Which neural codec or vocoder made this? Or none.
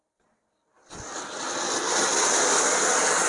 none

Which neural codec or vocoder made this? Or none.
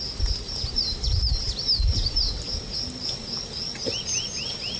none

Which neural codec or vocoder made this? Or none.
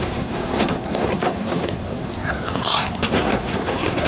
codec, SNAC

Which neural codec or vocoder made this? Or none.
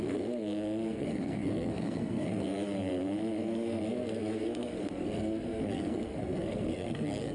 codec, SNAC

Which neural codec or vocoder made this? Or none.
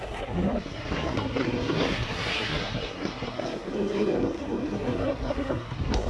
codec, SNAC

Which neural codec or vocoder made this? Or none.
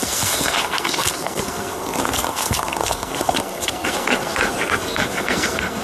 codec, SNAC